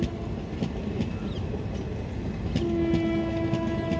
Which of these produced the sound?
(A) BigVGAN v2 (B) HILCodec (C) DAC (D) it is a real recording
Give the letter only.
D